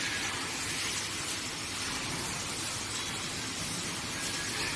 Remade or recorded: recorded